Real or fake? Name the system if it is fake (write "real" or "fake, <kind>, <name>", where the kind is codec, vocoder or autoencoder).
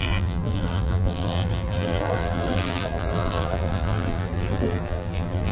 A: fake, vocoder, BigVGAN v2